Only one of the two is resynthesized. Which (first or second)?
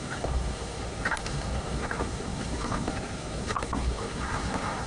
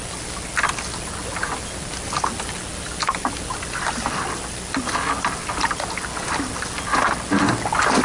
first